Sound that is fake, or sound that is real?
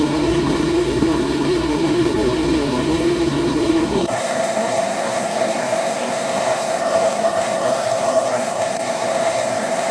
fake